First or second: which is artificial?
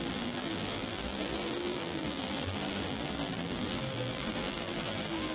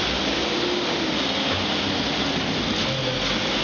first